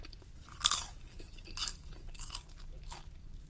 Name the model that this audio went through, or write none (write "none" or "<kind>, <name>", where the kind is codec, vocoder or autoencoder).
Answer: none